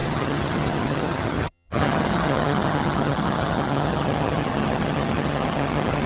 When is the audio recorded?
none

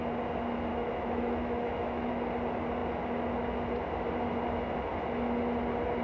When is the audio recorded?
0.0-0.7; 2.1-6.0

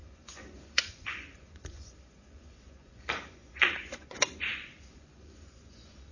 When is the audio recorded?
none

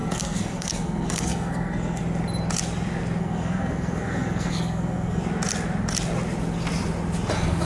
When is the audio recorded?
2.0-3.2; 5.2-7.6

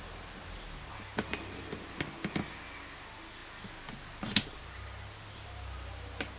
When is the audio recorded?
0.0-6.4

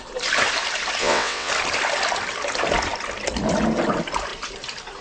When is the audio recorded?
0.0-1.0; 1.5-5.0